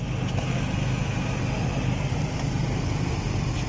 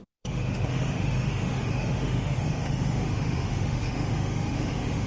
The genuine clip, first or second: first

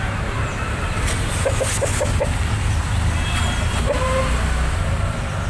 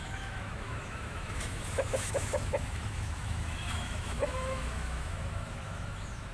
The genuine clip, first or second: first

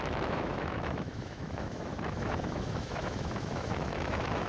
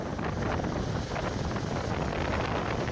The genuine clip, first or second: second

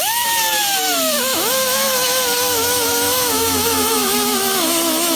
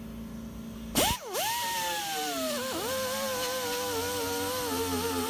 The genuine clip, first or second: second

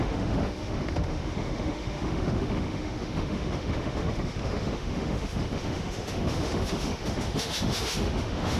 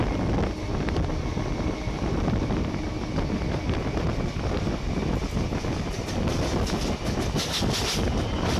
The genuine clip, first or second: second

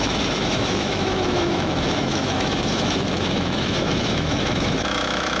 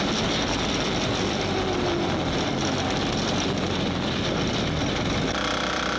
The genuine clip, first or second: second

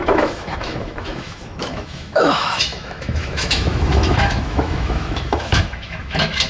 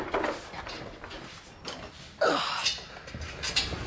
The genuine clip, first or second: second